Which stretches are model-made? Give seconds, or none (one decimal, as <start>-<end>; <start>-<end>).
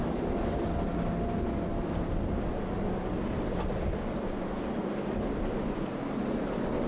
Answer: none